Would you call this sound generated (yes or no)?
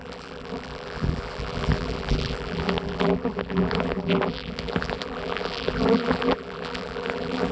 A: yes